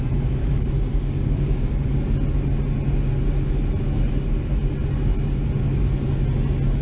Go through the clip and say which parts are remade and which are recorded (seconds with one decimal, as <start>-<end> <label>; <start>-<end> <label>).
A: 0.0-0.4 recorded; 0.4-1.9 remade; 1.9-6.8 recorded